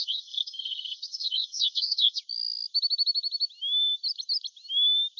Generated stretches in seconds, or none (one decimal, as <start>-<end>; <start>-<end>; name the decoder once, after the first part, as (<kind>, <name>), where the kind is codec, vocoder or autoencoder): 0.0-2.2 (codec, SNAC)

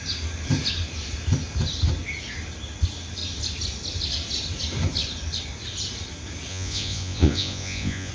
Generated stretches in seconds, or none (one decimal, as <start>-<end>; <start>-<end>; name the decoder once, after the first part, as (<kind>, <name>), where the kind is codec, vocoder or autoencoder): 6.5-8.1 (vocoder, Vocos)

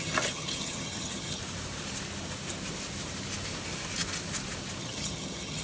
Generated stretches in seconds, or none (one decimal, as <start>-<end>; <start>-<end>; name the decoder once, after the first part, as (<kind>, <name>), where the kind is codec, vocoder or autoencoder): 0.0-1.4 (vocoder, HiFi-GAN); 4.8-5.6

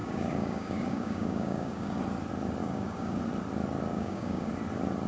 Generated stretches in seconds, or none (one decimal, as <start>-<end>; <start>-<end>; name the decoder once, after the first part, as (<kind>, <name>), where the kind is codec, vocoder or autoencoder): 0.0-2.0 (codec, DAC); 2.6-3.2; 3.9-4.5

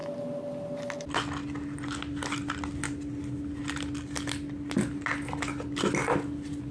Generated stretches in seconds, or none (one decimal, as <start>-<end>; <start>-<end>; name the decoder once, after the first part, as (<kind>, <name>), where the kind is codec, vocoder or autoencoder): none

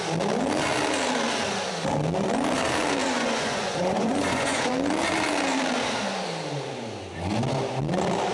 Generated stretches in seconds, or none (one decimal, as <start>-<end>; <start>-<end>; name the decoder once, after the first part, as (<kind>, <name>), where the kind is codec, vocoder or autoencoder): 3.0-4.7 (vocoder, Vocos)

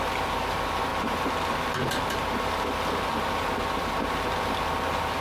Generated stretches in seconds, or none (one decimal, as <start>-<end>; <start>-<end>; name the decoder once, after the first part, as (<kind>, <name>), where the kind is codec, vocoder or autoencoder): 0.0-0.9 (vocoder, BigVGAN v2); 3.8-5.2